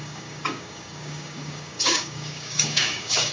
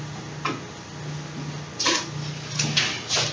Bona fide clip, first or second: second